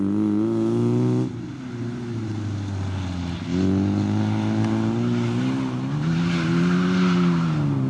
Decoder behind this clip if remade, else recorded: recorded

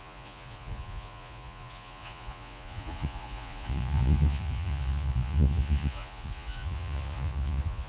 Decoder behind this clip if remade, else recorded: remade, vocoder, Vocos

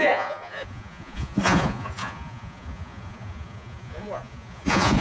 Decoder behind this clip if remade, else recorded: remade, vocoder, Vocos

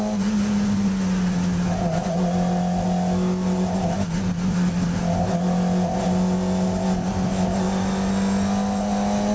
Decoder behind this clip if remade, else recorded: recorded